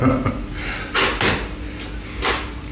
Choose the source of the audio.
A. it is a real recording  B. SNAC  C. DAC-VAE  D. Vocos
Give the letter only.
A